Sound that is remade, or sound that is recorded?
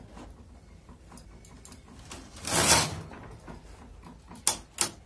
recorded